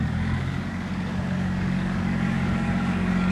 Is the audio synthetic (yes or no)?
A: yes